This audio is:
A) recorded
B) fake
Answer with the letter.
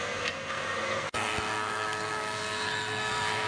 B